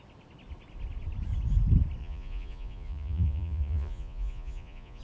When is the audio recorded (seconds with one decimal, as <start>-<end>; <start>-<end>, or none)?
0.0-2.0